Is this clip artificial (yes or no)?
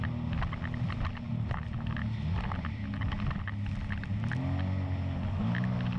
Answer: no